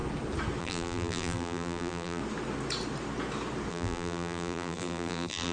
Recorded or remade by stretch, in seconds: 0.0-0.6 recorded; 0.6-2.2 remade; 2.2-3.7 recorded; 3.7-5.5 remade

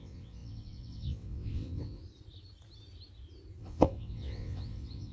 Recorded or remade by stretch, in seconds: 0.0-2.0 remade; 2.0-3.6 recorded; 3.6-5.1 remade

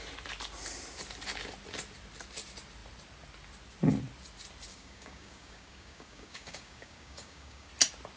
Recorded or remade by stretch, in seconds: 0.0-4.7 recorded; 4.7-7.7 remade; 7.7-8.2 recorded

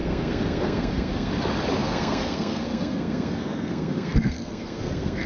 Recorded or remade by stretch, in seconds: 0.0-1.3 remade; 1.3-1.8 recorded; 1.8-5.3 remade

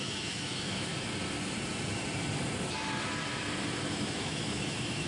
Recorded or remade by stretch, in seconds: 0.0-0.9 remade; 0.9-3.9 recorded; 3.9-5.1 remade